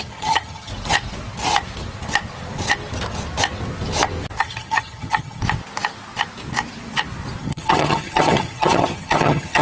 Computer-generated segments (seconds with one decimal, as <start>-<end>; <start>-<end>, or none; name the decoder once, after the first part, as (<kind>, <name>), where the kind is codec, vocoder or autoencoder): 0.0-0.7 (vocoder, HiFi-GAN); 4.4-5.4; 7.4-9.6